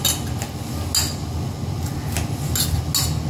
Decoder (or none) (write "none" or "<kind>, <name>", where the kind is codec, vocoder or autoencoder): none